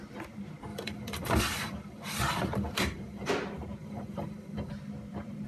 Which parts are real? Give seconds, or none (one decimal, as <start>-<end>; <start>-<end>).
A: 0.0-0.7; 3.3-3.8; 4.7-5.5